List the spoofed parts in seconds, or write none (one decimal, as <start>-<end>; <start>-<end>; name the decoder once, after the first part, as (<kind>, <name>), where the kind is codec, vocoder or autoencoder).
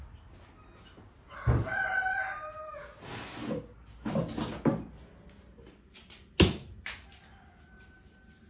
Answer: none